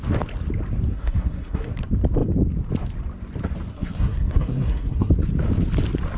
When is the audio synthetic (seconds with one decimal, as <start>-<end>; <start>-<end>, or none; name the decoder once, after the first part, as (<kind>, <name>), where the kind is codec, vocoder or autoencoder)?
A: 0.9-1.7 (codec, SNAC); 3.7-5.1